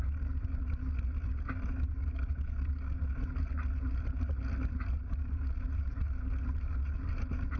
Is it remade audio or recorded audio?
recorded